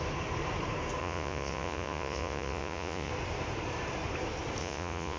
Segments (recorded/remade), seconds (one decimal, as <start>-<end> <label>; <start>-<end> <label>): 0.0-1.0 recorded; 1.0-3.1 remade; 3.1-4.6 recorded; 4.6-5.2 remade